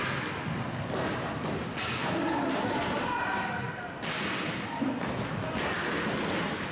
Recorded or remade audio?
recorded